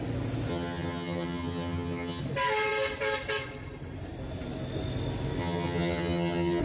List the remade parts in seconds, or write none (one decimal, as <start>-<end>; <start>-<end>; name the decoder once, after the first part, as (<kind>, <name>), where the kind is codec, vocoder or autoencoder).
0.5-2.2 (vocoder, HiFi-GAN); 5.4-6.6